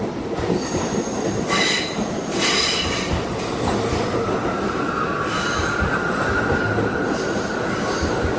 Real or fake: real